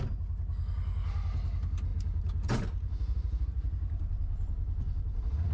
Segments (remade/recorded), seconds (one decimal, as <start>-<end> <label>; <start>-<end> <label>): 0.0-1.9 recorded; 1.9-5.5 remade